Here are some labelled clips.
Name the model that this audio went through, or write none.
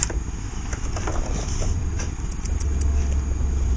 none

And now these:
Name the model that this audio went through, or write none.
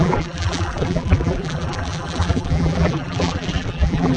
vocoder, BigVGAN v2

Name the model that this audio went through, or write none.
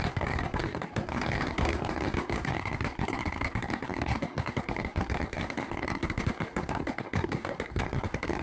codec, SNAC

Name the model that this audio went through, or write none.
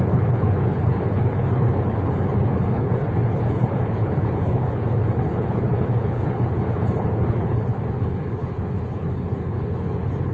codec, HILCodec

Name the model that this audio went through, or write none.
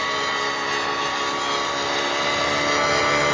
none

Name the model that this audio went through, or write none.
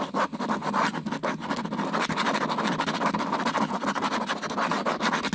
none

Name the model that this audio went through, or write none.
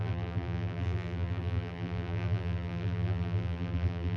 vocoder, BigVGAN v2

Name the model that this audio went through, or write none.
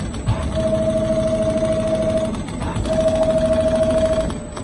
none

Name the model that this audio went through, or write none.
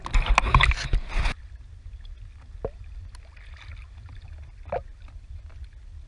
none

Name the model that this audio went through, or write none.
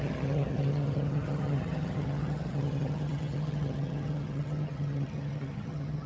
vocoder, HiFi-GAN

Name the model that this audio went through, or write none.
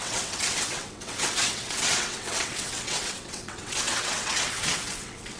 vocoder, WaveNeXt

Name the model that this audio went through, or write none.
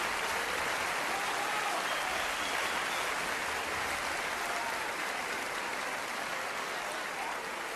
none